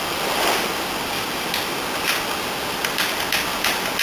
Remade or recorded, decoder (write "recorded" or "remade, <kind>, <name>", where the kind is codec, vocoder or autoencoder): recorded